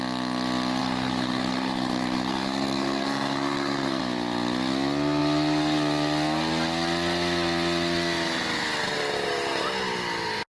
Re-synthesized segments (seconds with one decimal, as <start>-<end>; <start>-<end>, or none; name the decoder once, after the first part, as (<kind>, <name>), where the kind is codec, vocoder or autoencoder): 0.8-4.0 (codec, SNAC)